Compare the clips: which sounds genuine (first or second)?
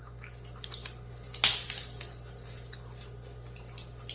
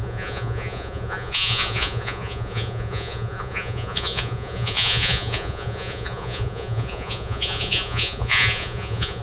first